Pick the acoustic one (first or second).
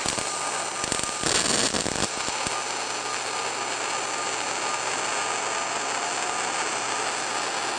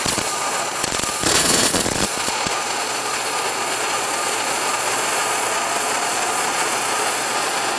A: first